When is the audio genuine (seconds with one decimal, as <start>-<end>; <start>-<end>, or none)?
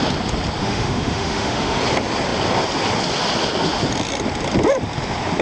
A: 0.0-0.6; 1.8-5.4